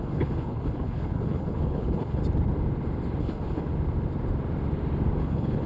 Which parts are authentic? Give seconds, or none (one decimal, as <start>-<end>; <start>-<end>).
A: 2.2-3.2; 3.7-5.2

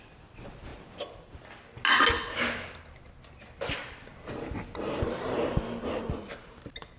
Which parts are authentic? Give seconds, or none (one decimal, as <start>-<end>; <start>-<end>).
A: 0.0-7.0

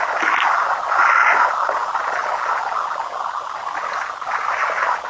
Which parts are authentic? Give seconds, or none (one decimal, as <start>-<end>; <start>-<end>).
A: 0.0-5.1

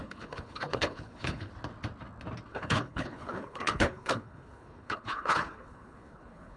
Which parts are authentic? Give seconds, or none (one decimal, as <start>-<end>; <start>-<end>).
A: 1.5-2.5

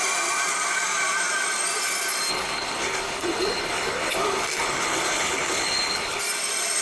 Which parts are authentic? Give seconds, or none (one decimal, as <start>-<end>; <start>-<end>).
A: 0.0-2.3; 6.2-6.8

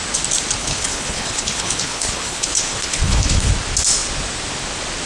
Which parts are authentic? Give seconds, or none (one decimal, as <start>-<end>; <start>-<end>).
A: 0.0-0.6; 3.5-5.1

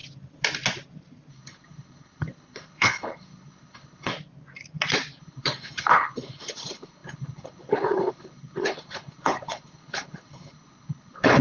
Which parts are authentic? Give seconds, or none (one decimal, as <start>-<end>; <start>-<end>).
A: 0.0-1.3; 4.1-5.2

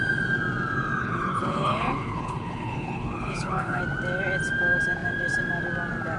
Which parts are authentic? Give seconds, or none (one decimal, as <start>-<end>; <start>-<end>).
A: 0.0-1.0; 3.8-6.2